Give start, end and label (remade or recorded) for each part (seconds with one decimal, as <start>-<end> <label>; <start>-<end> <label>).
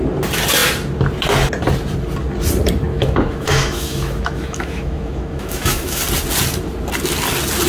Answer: 0.0-2.9 recorded; 2.9-6.0 remade; 6.0-7.7 recorded